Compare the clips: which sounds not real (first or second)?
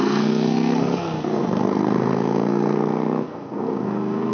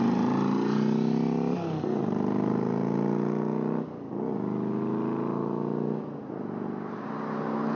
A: first